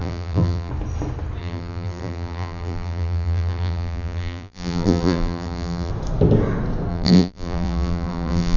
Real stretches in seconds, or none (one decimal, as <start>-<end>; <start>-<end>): 0.7-1.4; 5.9-6.9